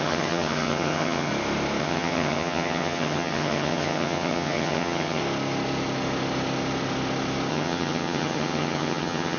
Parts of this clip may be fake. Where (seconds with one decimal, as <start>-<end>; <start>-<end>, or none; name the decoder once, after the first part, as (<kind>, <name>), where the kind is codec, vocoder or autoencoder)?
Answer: 0.0-1.3 (vocoder, HiFi-GAN); 1.8-5.2; 7.5-9.4